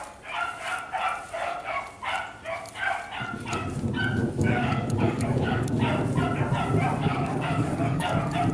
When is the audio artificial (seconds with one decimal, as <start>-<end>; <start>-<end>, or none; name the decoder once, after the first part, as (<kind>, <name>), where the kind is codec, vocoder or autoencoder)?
4.2-5.8 (codec, DAC); 7.0-8.1